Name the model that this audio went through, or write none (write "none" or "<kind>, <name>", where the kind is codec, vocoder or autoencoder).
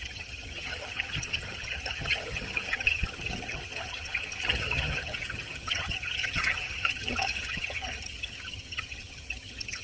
vocoder, HiFi-GAN